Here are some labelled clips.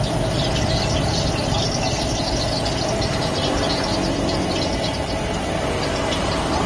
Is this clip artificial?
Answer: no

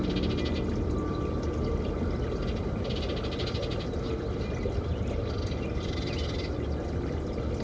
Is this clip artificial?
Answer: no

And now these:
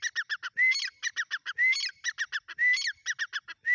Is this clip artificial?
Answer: no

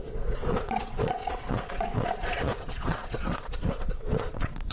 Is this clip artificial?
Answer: yes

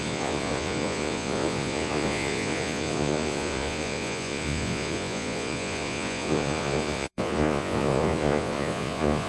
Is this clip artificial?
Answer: yes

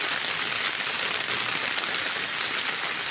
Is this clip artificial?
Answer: no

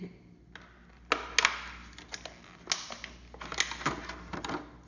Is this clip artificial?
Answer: no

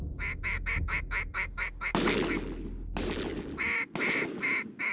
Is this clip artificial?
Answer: no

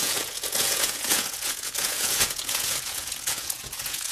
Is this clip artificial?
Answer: yes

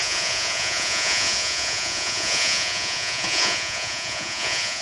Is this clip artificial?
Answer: yes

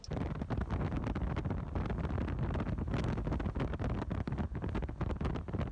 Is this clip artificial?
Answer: no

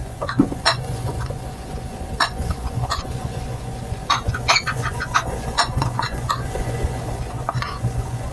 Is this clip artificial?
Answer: yes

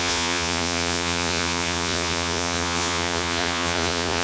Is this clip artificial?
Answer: yes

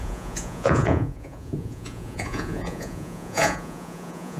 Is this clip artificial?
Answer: yes